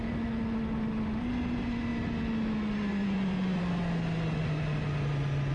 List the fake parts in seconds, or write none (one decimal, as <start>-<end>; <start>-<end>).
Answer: none